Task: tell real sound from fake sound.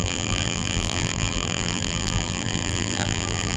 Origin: fake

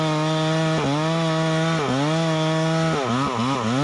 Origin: real